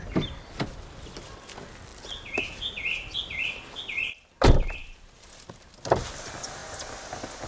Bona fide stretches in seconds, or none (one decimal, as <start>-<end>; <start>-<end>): 0.0-7.5